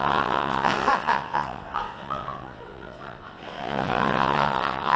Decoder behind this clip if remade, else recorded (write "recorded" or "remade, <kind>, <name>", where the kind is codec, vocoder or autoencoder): remade, vocoder, WaveNeXt